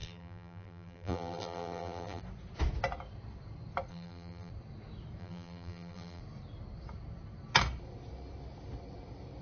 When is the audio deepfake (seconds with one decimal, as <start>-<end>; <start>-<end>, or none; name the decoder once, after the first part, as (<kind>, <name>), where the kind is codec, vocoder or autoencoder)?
0.0-2.2 (vocoder, BigVGAN v2); 3.9-4.5; 5.2-6.2